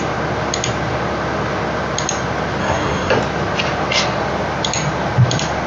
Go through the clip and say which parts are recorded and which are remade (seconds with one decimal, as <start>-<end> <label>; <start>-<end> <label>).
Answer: 0.0-2.6 recorded; 2.6-3.1 remade; 3.1-5.7 recorded